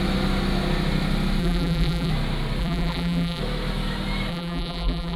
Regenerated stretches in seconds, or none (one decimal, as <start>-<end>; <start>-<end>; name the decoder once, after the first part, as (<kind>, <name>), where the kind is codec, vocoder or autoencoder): 1.4-2.1 (vocoder, BigVGAN v2); 2.6-3.4; 4.3-5.2